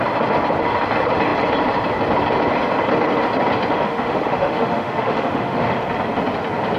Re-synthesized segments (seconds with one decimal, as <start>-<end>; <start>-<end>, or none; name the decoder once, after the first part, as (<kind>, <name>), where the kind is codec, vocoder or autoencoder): 3.7-5.7 (autoencoder, DAC-VAE)